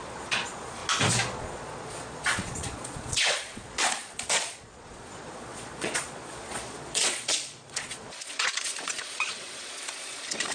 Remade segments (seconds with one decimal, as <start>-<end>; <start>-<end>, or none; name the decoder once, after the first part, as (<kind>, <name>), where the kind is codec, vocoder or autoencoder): 0.0-0.8 (vocoder, Vocos); 1.4-10.5